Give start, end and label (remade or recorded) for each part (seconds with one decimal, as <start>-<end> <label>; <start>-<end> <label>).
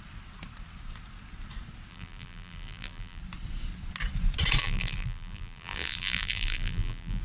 0.0-1.9 recorded; 1.9-3.2 remade; 3.2-4.6 recorded; 4.6-7.2 remade